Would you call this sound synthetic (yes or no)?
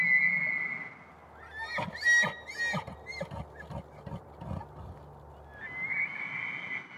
no